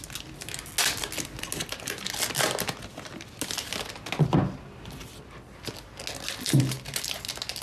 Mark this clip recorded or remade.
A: recorded